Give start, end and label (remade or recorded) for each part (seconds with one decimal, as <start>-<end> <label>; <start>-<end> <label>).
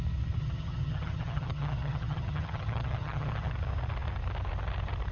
0.0-0.4 recorded; 0.4-3.5 remade; 3.5-5.1 recorded